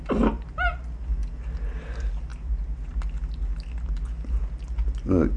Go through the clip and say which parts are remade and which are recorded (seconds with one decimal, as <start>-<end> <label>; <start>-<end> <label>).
0.0-5.4 recorded